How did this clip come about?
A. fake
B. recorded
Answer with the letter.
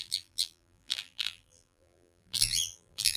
A